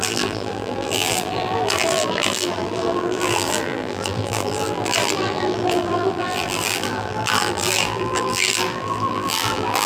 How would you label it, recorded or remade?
remade